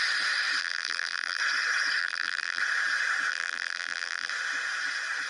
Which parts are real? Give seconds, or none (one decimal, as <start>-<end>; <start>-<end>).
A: 0.0-0.6; 1.4-2.0; 2.6-3.3; 4.3-5.3